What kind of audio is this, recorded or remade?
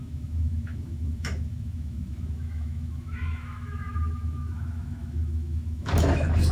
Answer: remade